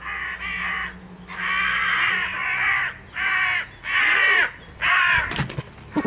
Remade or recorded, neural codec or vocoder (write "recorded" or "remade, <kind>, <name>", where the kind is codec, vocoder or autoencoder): recorded